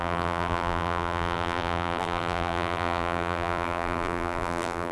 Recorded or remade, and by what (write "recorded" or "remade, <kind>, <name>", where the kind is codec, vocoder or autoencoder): remade, vocoder, BigVGAN v2